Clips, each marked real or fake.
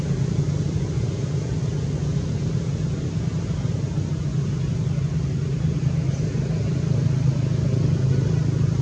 real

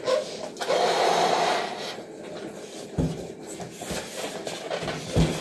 real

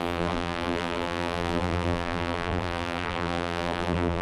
fake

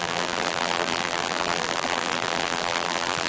fake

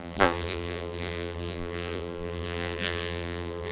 fake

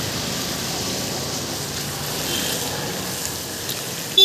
real